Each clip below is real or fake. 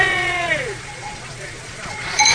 fake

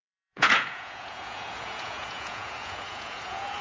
fake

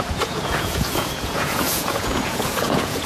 fake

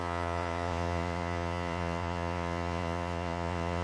fake